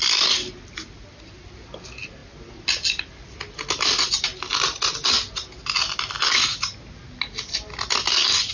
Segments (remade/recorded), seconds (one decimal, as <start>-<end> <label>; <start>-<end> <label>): 0.0-8.5 recorded